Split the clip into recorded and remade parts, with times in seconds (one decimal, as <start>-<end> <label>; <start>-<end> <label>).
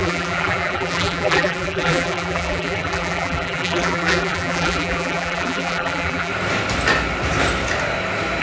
0.0-6.3 remade; 6.3-8.4 recorded